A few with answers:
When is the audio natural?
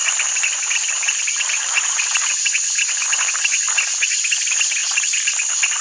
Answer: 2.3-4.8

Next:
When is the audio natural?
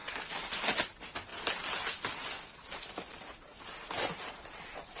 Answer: 0.0-5.0